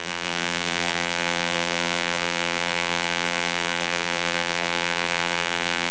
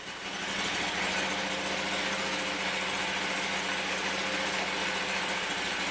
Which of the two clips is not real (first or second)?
first